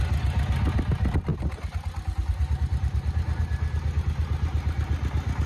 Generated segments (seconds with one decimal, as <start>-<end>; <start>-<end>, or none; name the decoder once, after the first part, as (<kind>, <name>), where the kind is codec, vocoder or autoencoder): none